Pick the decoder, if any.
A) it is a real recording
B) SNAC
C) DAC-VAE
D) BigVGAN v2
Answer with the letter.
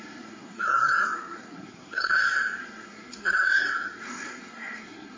B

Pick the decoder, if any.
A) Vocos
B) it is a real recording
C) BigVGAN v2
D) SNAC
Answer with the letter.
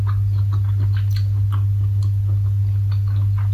B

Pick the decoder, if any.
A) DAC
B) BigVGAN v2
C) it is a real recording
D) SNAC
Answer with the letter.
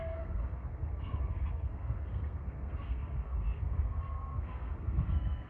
D